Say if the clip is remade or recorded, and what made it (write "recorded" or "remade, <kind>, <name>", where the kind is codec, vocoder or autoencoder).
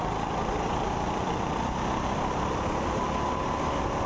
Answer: recorded